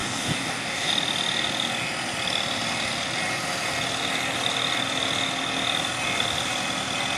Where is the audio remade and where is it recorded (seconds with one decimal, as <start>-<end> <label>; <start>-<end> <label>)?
0.0-0.9 remade; 0.9-7.2 recorded